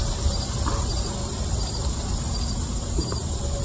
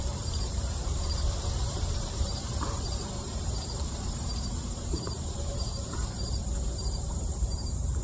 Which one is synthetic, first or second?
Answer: second